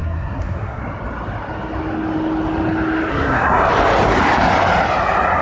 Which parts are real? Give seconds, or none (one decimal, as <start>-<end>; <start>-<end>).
0.8-3.1; 3.7-5.4